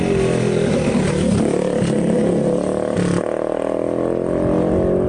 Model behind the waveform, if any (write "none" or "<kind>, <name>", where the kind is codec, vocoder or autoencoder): none